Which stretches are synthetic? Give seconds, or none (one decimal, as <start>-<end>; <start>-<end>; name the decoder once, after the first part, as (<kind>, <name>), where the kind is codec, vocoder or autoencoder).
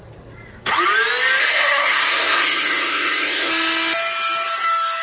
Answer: 1.4-3.5 (codec, SNAC)